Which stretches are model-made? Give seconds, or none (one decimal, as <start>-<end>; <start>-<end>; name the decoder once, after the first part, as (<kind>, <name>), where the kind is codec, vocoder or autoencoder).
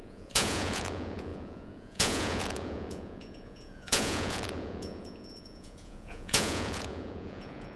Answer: 0.0-7.8 (vocoder, Vocos)